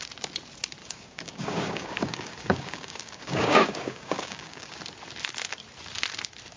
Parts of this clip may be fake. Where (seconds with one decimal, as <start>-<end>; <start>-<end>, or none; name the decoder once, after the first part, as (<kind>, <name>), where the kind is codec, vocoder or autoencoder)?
0.8-4.8 (codec, DAC)